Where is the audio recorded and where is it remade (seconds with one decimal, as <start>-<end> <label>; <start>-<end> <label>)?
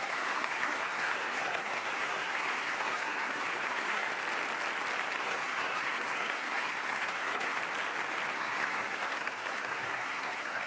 0.0-4.1 remade; 4.1-5.2 recorded; 5.2-7.6 remade; 7.6-8.3 recorded; 8.3-10.7 remade